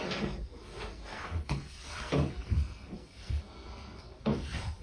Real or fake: fake